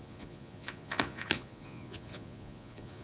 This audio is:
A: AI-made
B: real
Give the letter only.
A